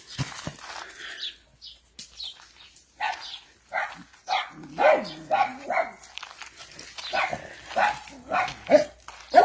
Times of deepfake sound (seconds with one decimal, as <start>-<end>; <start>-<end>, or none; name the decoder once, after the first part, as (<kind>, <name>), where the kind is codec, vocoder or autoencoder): none